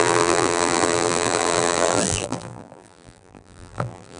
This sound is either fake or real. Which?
fake